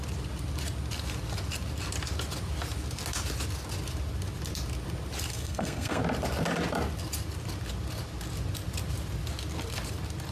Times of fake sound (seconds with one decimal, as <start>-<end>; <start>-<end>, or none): 5.3-6.0